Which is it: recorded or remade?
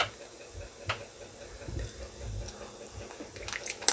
recorded